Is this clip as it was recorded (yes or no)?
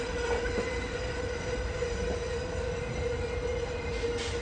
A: yes